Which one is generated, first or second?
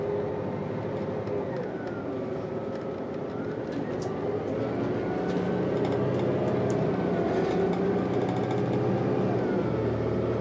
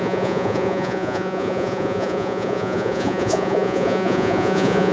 second